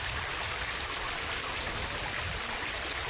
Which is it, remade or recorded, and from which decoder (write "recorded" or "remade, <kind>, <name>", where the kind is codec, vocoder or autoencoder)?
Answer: remade, vocoder, BigVGAN v2